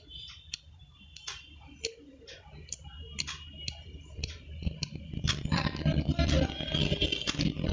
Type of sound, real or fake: fake